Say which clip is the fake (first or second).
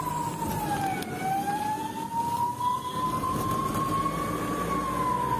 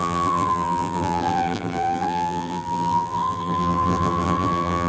second